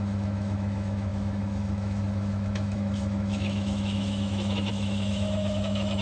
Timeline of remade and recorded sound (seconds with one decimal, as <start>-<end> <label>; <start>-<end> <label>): 0.0-6.0 remade